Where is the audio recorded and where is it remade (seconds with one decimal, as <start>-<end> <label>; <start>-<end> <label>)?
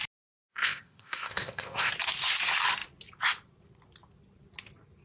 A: 0.0-0.5 recorded; 0.5-1.9 remade; 1.9-5.0 recorded